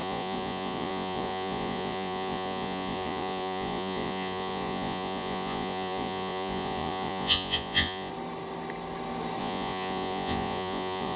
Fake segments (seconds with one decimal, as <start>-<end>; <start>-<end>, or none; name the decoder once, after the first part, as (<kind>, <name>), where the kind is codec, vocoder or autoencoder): 0.0-8.1 (vocoder, Vocos); 9.4-11.2